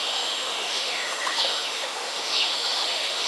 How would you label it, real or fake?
fake